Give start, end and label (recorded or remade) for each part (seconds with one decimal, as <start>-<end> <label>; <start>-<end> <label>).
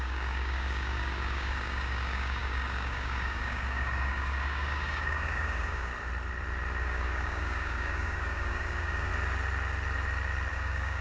0.0-5.9 remade; 5.9-6.8 recorded; 6.8-9.1 remade; 9.1-10.5 recorded; 10.5-11.0 remade